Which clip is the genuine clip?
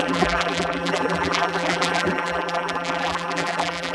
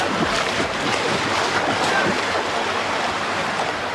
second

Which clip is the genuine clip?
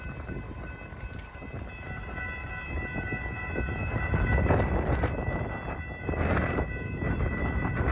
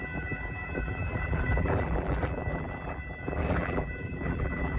first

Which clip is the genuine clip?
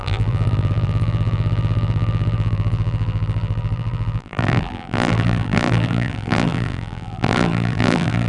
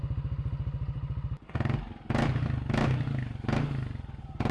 second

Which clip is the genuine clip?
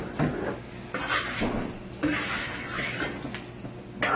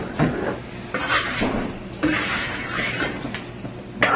first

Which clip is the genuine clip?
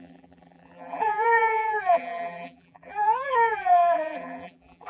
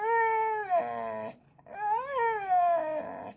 second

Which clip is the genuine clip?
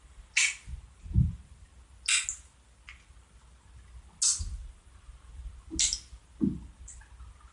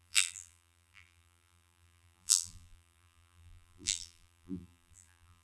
first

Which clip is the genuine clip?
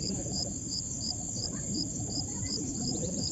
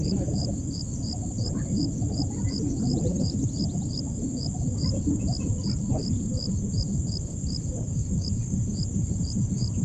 second